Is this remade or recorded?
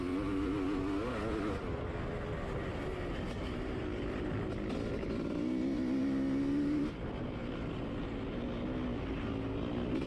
recorded